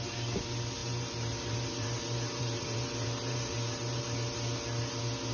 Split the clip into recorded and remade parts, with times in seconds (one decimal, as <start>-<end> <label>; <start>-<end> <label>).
0.0-0.8 recorded; 0.8-4.0 remade; 4.0-5.3 recorded